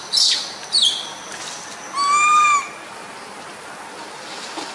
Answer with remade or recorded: recorded